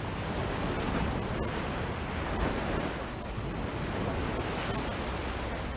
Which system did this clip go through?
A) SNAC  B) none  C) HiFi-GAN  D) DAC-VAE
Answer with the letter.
B